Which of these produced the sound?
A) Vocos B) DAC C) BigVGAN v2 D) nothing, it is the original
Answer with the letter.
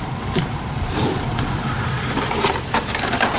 C